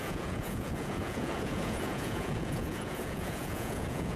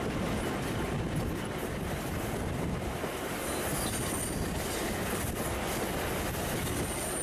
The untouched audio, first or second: second